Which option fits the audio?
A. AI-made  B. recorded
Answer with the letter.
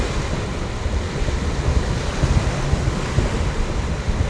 B